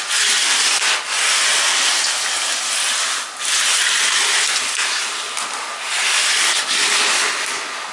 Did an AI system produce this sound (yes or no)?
no